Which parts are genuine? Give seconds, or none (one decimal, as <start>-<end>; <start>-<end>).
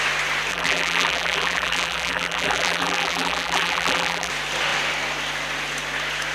0.0-0.5; 4.3-6.3